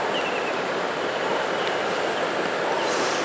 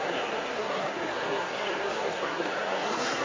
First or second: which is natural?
first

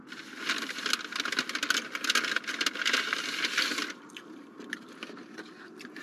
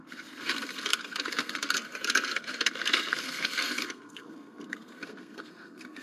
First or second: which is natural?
first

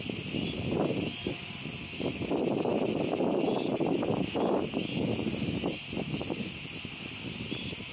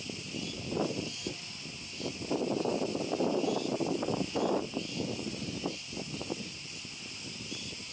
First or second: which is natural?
first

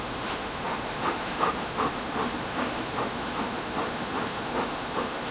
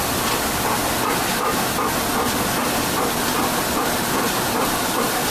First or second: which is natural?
second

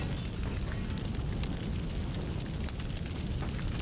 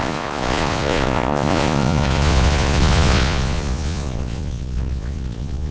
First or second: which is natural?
first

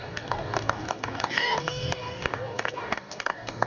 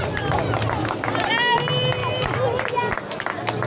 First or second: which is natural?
second